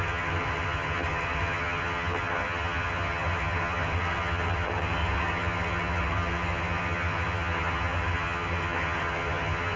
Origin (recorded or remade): remade